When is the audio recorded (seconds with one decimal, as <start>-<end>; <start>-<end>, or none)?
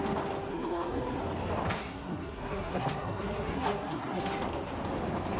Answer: 0.0-0.5; 1.2-1.8; 4.2-5.4